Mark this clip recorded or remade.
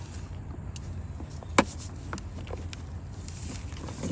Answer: recorded